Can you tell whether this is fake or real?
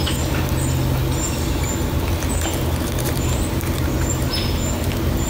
real